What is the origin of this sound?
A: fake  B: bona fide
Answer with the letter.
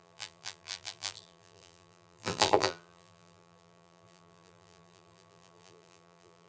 A